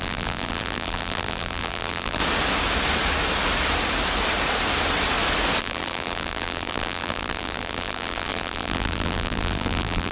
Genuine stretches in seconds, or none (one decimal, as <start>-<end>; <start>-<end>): 2.2-5.6